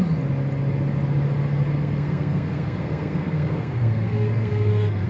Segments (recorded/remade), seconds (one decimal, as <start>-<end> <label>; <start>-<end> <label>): 0.0-1.6 recorded; 1.6-5.1 remade